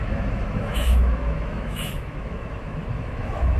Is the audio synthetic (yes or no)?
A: yes